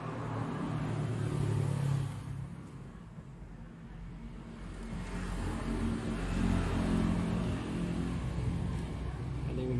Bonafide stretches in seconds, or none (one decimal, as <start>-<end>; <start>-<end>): 0.0-9.8